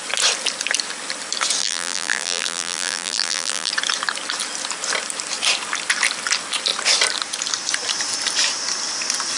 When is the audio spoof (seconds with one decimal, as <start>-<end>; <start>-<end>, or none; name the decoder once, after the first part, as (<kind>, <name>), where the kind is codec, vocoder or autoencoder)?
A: 1.6-3.7 (vocoder, BigVGAN v2)